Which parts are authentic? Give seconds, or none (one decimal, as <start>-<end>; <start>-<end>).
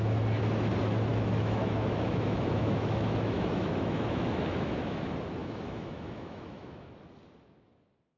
0.0-1.1; 5.0-5.4; 6.9-8.2